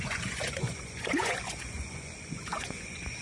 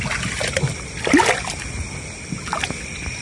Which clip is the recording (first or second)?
second